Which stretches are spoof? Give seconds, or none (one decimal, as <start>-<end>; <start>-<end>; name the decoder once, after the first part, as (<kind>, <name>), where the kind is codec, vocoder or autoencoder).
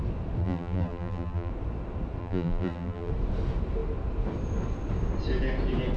0.4-1.5 (vocoder, BigVGAN v2); 2.2-3.1